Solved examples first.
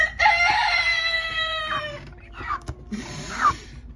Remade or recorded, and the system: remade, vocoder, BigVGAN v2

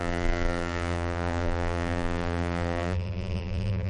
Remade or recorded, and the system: remade, vocoder, BigVGAN v2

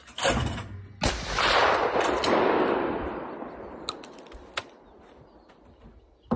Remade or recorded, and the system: recorded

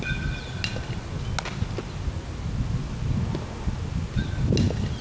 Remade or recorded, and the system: recorded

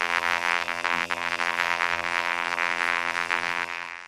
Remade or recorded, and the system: remade, vocoder, BigVGAN v2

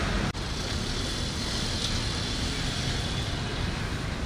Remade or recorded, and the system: recorded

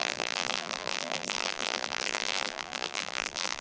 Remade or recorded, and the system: remade, vocoder, BigVGAN v2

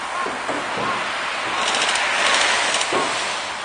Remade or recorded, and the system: recorded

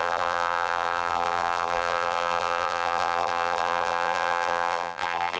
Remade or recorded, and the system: remade, vocoder, BigVGAN v2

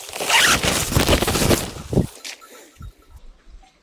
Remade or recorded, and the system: recorded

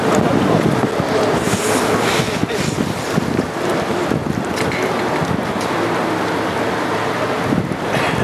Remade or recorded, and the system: recorded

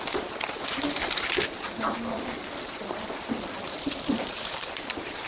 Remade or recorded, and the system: remade, vocoder, BigVGAN v2